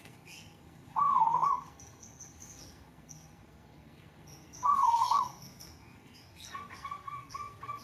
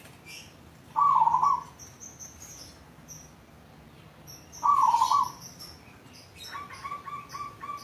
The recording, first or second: second